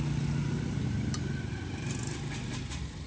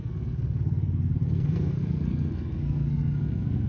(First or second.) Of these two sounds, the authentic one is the first